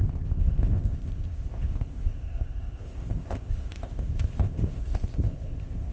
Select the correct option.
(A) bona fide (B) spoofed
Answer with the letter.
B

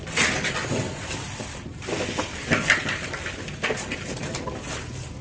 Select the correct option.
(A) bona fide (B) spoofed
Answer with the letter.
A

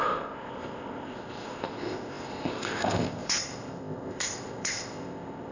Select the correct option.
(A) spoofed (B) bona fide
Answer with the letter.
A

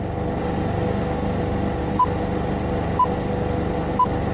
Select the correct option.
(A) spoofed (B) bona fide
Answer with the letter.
B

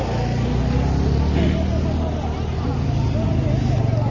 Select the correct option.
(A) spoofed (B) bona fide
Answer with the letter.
B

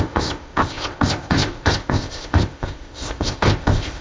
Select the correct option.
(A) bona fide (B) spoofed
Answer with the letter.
B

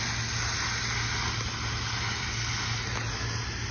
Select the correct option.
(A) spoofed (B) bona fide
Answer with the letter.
B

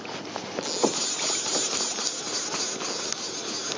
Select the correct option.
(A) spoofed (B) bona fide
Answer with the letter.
B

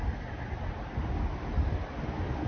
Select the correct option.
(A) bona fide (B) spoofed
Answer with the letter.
A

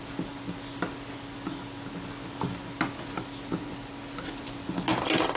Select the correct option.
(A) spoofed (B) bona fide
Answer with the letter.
B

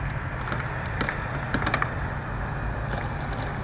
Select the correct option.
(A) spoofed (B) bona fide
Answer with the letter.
B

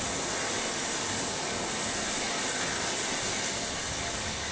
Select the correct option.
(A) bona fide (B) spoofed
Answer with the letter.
A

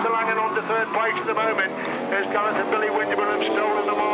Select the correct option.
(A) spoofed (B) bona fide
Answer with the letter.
B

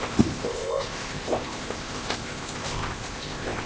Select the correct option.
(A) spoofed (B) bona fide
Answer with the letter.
A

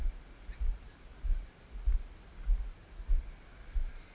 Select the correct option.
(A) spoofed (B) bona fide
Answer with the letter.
B